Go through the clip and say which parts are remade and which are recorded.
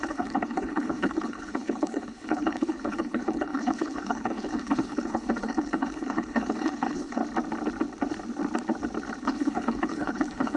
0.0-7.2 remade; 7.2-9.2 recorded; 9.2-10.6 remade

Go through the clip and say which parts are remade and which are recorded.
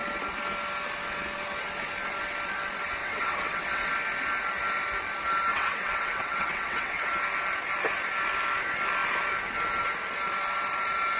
0.0-3.0 recorded; 3.0-3.9 remade; 3.9-5.5 recorded; 5.5-7.1 remade; 7.1-11.2 recorded